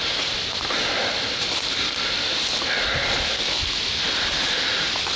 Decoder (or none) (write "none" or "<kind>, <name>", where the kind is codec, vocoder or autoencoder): none